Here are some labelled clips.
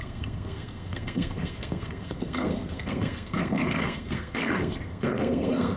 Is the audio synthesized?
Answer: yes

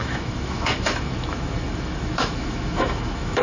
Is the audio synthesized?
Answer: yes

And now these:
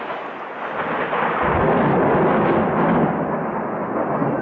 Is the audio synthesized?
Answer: no